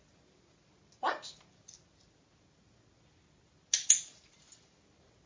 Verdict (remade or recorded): recorded